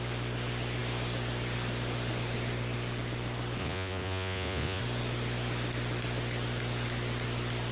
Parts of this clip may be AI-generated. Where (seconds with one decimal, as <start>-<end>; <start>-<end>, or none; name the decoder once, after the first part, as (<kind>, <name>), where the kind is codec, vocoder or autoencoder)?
3.6-4.8 (vocoder, Vocos)